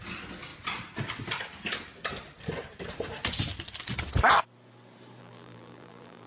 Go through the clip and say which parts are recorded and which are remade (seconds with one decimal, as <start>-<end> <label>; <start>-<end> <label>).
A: 0.0-5.2 recorded; 5.2-6.3 remade

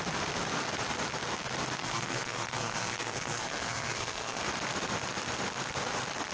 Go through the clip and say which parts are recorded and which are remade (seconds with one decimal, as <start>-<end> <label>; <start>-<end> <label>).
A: 0.0-1.8 recorded; 1.8-4.4 remade; 4.4-6.3 recorded